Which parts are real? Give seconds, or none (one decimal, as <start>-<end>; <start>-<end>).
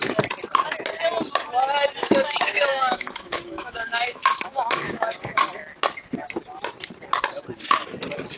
0.0-2.0; 5.4-8.4